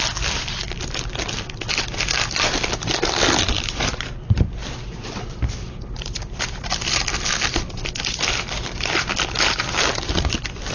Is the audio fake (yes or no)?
yes